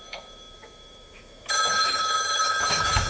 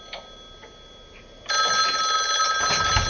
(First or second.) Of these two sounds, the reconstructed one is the first